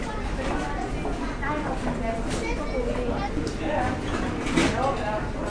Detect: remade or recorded recorded